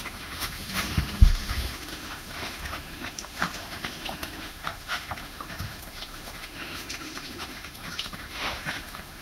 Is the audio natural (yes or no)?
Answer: no